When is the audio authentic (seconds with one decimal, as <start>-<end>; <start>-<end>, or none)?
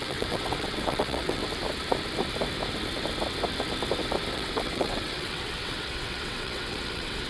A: 1.4-4.3